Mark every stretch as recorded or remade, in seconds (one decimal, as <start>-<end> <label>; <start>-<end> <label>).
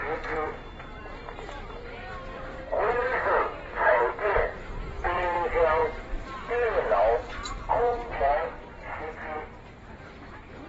0.0-10.7 remade